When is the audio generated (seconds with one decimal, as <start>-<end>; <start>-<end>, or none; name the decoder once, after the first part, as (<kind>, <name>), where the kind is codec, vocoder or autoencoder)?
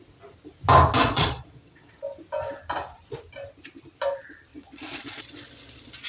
1.0-2.0 (vocoder, Vocos); 4.5-6.1